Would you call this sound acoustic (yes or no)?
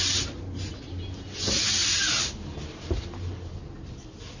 yes